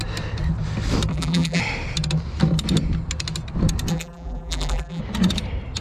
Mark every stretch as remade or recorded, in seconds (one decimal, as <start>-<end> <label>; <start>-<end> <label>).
0.0-1.1 recorded; 1.1-1.6 remade; 1.6-3.9 recorded; 3.9-5.0 remade; 5.0-5.8 recorded

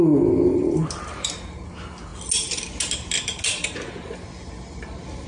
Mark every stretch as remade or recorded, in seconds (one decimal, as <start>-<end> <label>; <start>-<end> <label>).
0.0-5.3 recorded

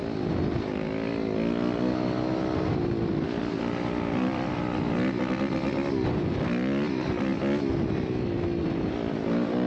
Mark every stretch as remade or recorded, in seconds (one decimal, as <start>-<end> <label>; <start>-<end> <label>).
0.0-3.4 recorded; 3.4-7.3 remade; 7.3-8.6 recorded; 8.6-9.7 remade

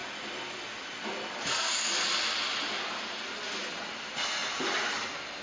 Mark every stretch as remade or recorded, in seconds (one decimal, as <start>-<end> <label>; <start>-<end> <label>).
0.0-5.4 recorded